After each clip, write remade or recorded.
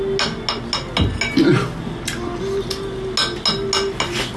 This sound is recorded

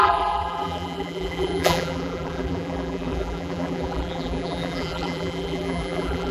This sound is remade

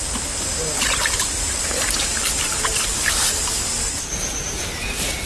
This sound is recorded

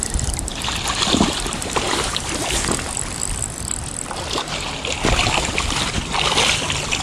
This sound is recorded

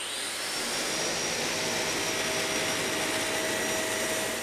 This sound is recorded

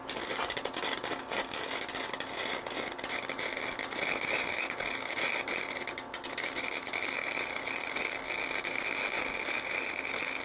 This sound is recorded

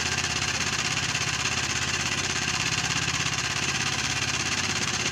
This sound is remade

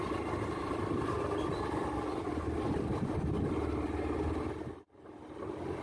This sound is recorded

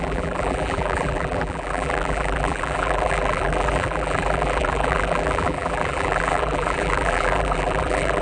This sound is remade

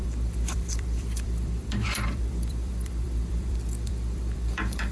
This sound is remade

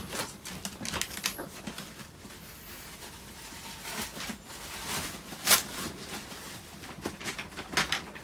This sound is recorded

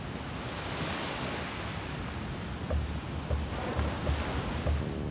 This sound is recorded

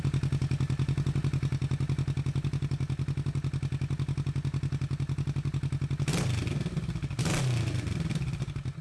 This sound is recorded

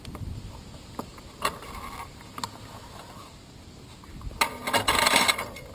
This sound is recorded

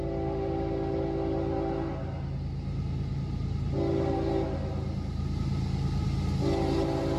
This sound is recorded